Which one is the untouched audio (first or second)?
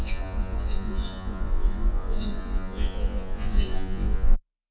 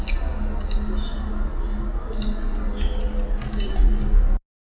second